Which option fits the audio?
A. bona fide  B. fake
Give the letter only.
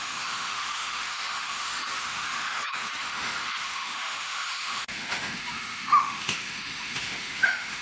B